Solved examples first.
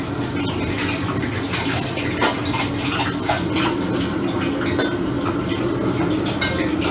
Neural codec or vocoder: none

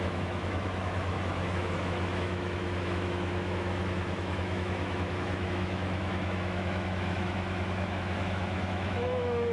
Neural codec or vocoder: autoencoder, DAC-VAE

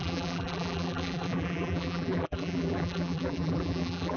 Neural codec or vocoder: vocoder, BigVGAN v2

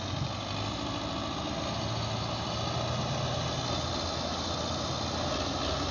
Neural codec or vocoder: none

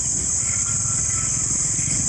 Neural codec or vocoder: none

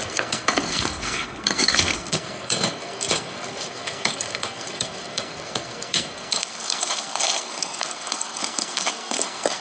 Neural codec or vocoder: codec, SNAC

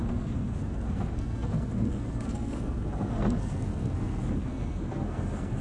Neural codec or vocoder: codec, SNAC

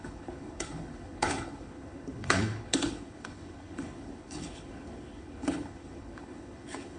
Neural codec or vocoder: codec, HILCodec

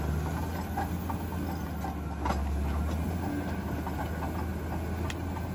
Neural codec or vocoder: none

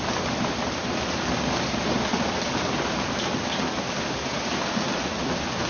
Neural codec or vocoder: none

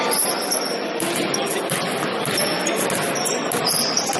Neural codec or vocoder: none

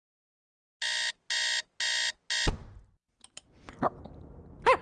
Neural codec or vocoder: none